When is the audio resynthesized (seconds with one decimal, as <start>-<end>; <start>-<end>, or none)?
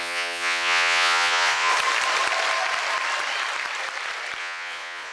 0.0-1.7; 4.4-5.1